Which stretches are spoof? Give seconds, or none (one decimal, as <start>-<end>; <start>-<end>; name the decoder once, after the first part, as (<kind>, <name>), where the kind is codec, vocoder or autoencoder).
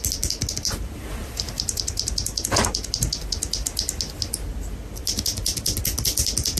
1.2-2.6 (vocoder, BigVGAN v2)